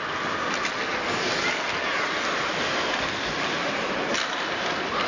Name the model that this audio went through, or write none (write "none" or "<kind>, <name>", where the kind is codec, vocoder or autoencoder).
none